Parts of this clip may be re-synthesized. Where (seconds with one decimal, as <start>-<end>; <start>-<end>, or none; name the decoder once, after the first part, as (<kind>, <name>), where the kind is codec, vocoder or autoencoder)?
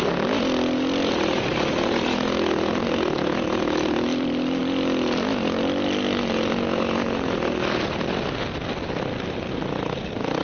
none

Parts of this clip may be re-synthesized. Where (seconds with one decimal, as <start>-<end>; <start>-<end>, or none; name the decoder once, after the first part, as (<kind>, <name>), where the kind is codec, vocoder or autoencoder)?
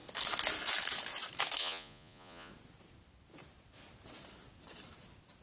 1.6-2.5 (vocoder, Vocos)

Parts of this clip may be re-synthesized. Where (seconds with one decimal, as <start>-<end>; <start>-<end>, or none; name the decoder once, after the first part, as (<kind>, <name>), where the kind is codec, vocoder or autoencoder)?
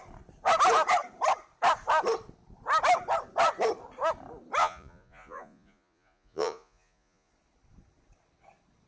4.6-7.3 (vocoder, Vocos)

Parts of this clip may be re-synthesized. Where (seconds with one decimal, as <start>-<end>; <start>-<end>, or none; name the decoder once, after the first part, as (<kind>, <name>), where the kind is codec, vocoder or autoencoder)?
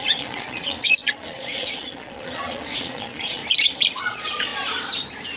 0.0-3.4 (vocoder, Vocos); 4.0-4.5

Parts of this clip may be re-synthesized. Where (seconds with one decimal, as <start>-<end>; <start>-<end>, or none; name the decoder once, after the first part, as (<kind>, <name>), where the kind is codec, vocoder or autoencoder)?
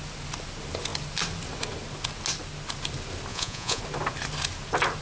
3.3-3.8 (vocoder, Vocos)